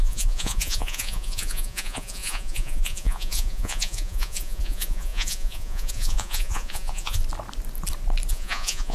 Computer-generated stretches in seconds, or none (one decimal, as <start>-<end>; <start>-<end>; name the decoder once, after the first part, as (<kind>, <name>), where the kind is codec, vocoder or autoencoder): 0.0-7.2 (vocoder, Vocos); 8.3-8.9